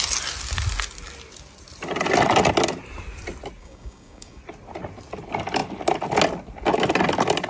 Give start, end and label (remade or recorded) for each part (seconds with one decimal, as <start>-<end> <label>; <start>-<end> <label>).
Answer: 0.0-3.6 recorded; 3.6-4.4 remade; 4.4-7.5 recorded